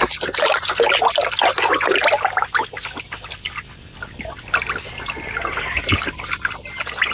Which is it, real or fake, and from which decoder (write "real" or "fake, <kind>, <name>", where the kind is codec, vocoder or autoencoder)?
real